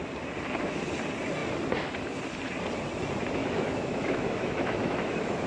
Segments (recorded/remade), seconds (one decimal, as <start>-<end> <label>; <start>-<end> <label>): 0.0-3.4 recorded; 3.4-5.5 remade